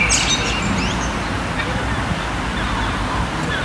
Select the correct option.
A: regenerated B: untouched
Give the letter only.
B